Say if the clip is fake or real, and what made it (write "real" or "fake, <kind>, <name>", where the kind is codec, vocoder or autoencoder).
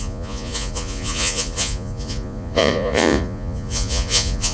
fake, vocoder, Vocos